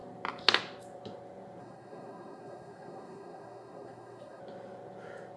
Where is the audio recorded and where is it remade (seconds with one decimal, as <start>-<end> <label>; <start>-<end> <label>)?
0.0-1.6 recorded; 1.6-4.4 remade; 4.4-5.4 recorded